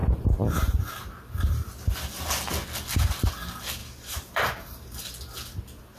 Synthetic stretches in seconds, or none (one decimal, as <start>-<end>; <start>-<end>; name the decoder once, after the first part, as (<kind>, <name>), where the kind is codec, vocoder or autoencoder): 0.0-0.8 (vocoder, BigVGAN v2); 3.8-5.1